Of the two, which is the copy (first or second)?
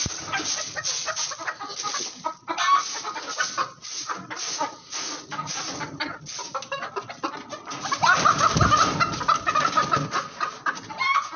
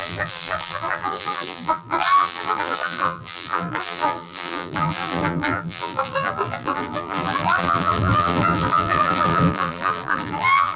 second